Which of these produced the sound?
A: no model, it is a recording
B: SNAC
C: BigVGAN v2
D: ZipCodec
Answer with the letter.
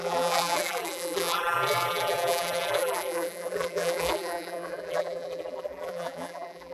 C